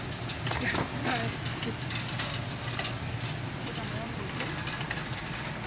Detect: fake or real real